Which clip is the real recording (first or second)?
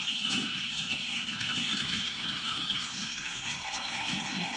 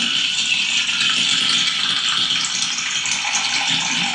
second